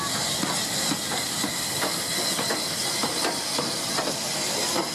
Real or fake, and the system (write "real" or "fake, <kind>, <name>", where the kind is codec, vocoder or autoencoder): real